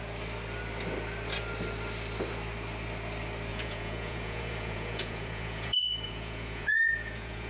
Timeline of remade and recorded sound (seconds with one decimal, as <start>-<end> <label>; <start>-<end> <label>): 0.0-3.5 recorded; 3.5-7.5 remade